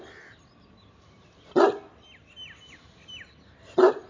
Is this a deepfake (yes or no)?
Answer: no